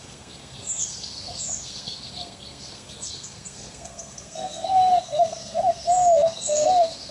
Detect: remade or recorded remade